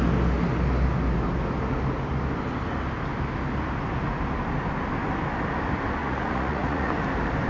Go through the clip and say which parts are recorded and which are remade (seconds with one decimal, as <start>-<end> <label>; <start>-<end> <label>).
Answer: 0.0-6.0 recorded; 6.0-6.9 remade; 6.9-7.5 recorded